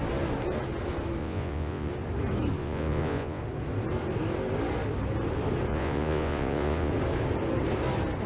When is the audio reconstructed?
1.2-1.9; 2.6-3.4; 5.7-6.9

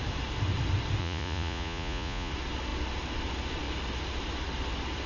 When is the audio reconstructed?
1.0-2.3

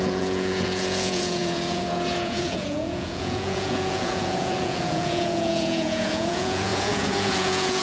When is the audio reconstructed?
0.0-7.8

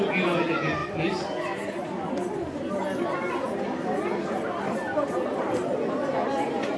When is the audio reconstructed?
none

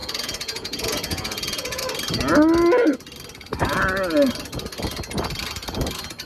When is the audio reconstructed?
0.0-1.8

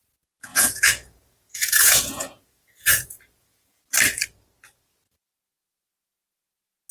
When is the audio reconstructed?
0.5-3.8

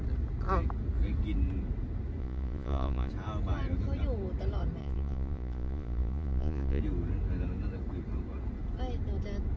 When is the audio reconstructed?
2.2-3.1; 4.8-6.8